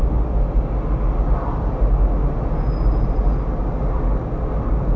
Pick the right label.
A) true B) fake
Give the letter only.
A